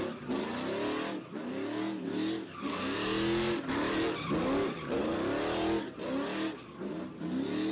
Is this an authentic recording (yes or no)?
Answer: yes